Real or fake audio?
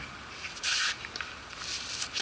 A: real